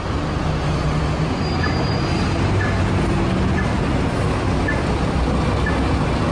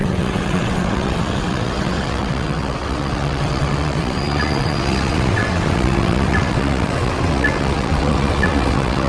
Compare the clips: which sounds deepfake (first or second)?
second